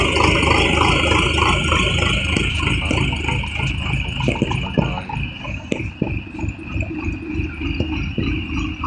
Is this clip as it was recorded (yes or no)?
yes